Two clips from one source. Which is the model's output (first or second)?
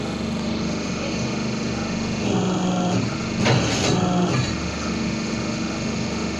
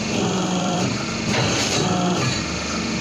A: second